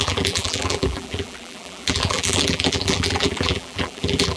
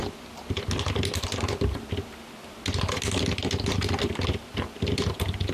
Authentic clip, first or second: second